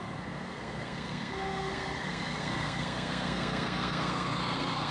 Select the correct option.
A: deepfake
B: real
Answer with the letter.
A